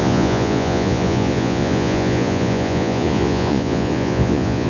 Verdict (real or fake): fake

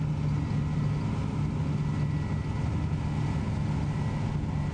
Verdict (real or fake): real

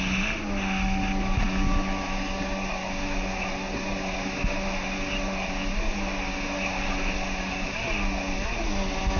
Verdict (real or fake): real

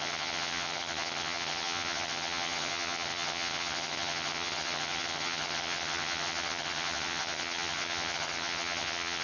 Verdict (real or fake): fake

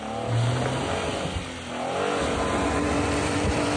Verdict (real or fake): real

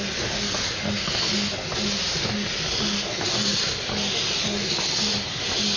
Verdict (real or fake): real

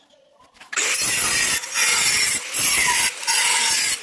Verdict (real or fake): real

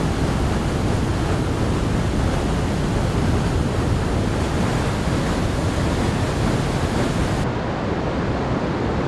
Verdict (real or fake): real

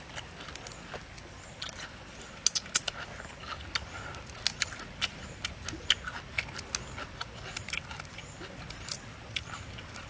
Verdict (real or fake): real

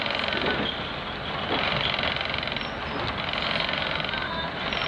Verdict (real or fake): real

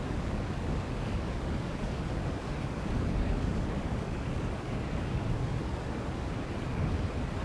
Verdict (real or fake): fake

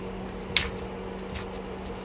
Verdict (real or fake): real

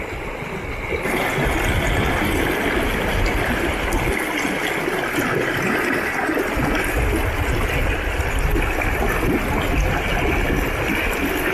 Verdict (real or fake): real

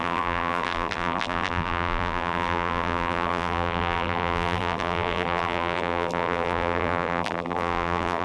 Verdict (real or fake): fake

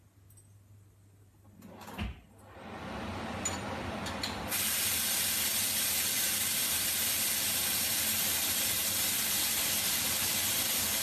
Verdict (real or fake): real